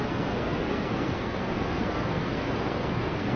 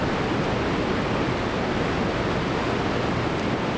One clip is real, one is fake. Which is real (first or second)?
second